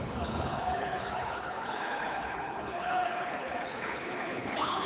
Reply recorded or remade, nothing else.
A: remade